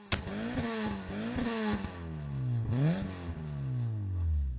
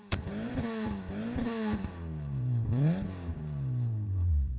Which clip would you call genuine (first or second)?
first